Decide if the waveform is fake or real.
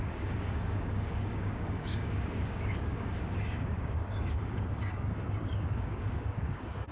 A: fake